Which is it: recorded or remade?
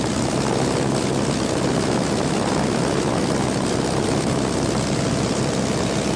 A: recorded